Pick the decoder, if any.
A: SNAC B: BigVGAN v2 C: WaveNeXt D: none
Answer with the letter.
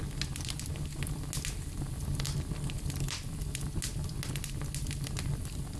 D